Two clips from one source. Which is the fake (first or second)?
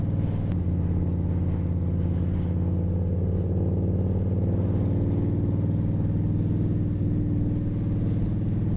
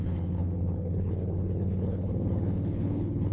second